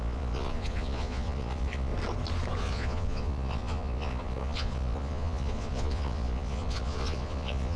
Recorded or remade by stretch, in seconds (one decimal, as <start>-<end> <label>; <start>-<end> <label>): 0.0-1.9 remade; 1.9-2.6 recorded; 2.6-7.8 remade

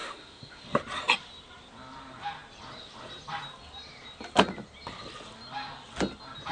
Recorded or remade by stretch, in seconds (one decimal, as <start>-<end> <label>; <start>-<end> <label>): 0.0-0.6 remade; 0.6-6.5 recorded

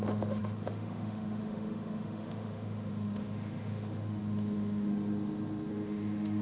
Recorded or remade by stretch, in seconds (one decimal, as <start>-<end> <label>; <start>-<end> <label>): 0.0-4.9 remade; 4.9-5.7 recorded; 5.7-6.4 remade

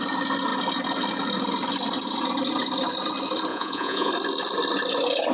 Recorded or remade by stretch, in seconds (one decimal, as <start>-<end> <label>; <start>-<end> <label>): 0.0-3.5 recorded; 3.5-4.1 remade; 4.1-5.3 recorded

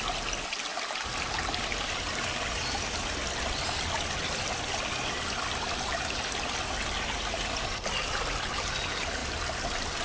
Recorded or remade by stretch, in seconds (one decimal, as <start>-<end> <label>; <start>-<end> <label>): 0.0-10.0 recorded

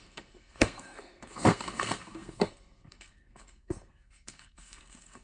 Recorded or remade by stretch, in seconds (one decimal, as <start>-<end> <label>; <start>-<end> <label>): 0.0-5.2 remade